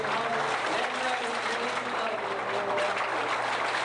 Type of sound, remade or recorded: recorded